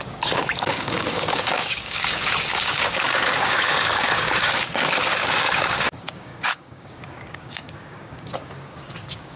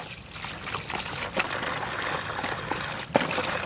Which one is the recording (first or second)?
second